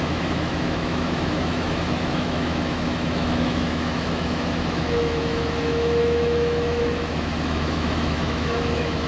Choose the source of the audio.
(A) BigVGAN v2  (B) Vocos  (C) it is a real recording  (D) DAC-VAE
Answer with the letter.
D